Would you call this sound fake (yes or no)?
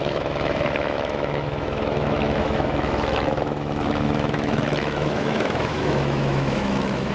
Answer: yes